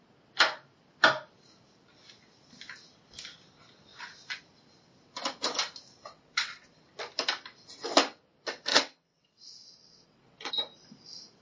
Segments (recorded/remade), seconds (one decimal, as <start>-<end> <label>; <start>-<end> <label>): 0.0-6.0 recorded; 6.0-6.8 remade; 6.8-8.7 recorded; 8.7-10.5 remade; 10.5-11.4 recorded